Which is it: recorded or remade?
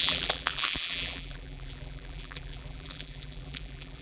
remade